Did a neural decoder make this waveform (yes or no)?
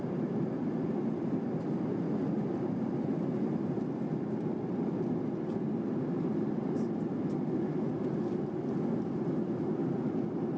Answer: no